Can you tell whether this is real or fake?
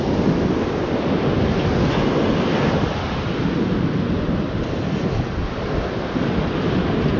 real